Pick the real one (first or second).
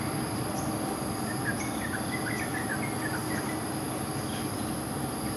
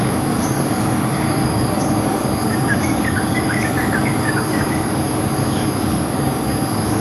first